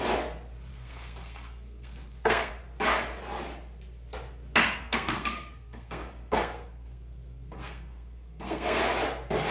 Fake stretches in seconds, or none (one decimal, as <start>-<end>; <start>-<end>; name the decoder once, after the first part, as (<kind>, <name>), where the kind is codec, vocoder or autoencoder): 0.7-2.5 (codec, SNAC); 4.6-8.8